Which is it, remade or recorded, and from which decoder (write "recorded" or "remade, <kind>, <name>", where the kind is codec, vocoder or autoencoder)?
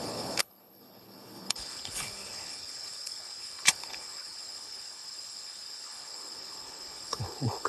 remade, codec, HILCodec